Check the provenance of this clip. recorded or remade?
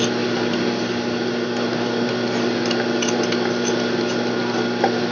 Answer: recorded